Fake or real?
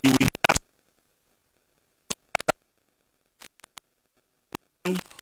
real